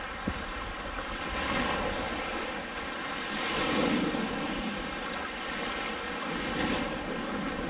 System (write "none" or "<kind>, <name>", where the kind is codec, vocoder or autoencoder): none